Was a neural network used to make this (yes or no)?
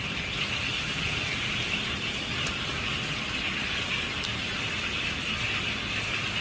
yes